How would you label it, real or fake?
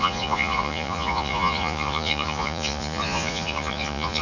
fake